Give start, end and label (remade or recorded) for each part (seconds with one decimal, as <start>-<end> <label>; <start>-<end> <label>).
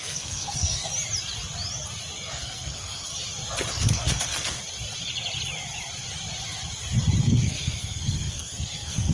0.0-0.9 remade; 0.9-2.3 recorded; 2.3-3.1 remade; 3.1-3.7 recorded; 3.7-4.6 remade; 4.6-7.2 recorded; 7.2-9.1 remade